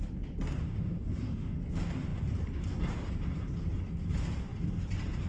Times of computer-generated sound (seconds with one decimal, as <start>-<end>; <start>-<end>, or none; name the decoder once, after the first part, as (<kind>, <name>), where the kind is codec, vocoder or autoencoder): 0.6-1.6 (autoencoder, DAC-VAE)